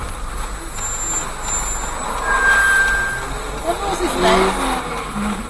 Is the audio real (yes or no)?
yes